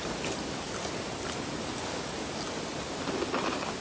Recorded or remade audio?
recorded